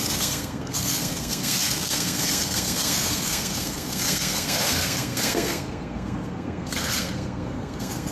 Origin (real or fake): fake